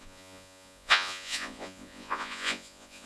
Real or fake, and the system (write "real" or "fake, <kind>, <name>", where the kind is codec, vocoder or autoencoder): fake, vocoder, Vocos